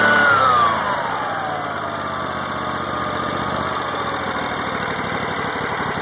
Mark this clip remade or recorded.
remade